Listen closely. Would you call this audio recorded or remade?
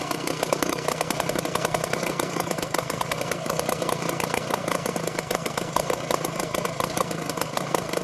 remade